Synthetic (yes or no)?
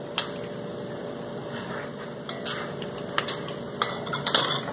no